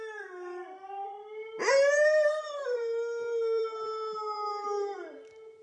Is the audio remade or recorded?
remade